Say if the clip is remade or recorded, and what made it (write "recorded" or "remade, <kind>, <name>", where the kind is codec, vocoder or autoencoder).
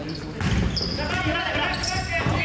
recorded